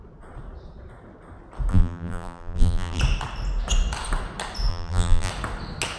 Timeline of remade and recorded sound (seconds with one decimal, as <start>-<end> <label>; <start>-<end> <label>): 0.0-1.7 recorded; 1.7-3.0 remade; 3.0-4.7 recorded; 4.7-5.3 remade; 5.3-6.0 recorded